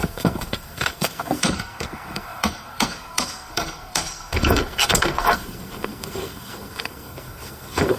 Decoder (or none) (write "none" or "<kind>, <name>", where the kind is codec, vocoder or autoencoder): codec, SNAC